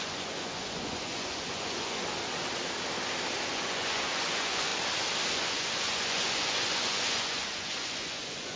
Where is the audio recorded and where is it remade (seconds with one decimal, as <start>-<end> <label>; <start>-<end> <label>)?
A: 0.0-2.0 remade; 2.0-3.5 recorded; 3.5-4.7 remade; 4.7-5.3 recorded; 5.3-8.6 remade